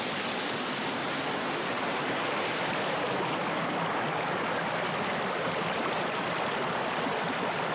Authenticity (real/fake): real